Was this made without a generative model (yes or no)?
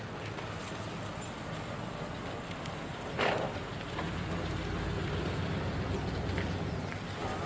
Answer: yes